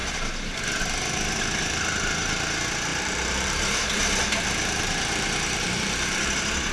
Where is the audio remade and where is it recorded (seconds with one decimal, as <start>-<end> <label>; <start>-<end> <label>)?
0.0-2.9 recorded; 2.9-6.3 remade; 6.3-6.7 recorded